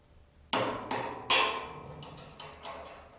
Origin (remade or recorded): recorded